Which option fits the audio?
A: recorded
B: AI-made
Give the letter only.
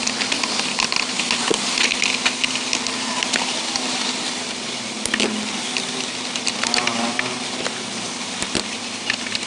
A